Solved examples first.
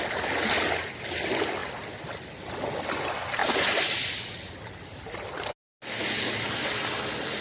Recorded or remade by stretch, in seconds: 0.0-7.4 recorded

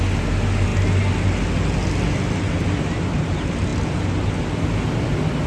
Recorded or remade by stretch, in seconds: 0.0-5.5 recorded

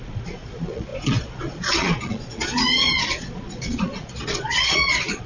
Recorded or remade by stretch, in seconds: 0.0-5.3 remade

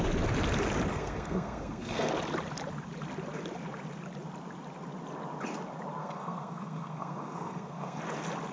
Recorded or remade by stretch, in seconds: 0.0-0.9 recorded; 0.9-2.1 remade; 2.1-6.0 recorded; 6.0-8.0 remade; 8.0-8.5 recorded